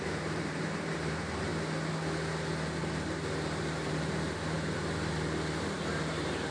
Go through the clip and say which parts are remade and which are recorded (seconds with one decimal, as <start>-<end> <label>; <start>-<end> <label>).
0.0-1.5 remade; 1.5-2.8 recorded; 2.8-6.5 remade